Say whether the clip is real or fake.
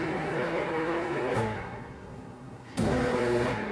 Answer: fake